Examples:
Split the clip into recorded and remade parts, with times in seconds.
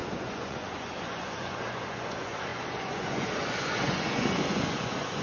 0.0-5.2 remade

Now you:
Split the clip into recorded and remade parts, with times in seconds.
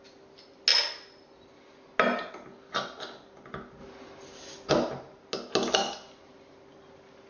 0.0-7.3 recorded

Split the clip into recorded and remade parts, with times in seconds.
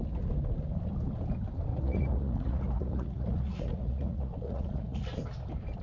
0.0-1.7 recorded; 1.7-5.2 remade; 5.2-5.8 recorded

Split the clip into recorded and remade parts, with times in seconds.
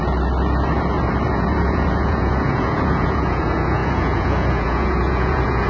0.0-1.3 recorded; 1.3-5.7 remade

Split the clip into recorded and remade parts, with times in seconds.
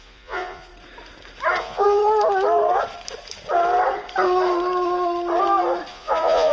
0.0-0.7 remade; 0.7-1.6 recorded; 1.6-2.0 remade; 2.0-5.9 recorded; 5.9-6.5 remade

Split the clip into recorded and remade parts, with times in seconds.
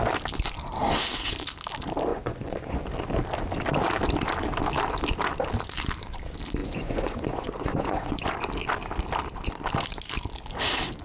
0.0-2.1 recorded; 2.1-2.8 remade; 2.8-6.6 recorded; 6.6-8.2 remade; 8.2-11.0 recorded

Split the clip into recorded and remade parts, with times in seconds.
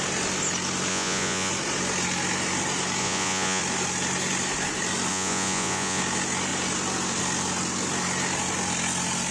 0.0-0.9 recorded; 0.9-1.5 remade; 1.5-3.0 recorded; 3.0-3.6 remade; 3.6-5.1 recorded; 5.1-6.0 remade; 6.0-9.3 recorded